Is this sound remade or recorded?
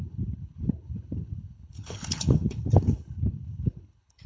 remade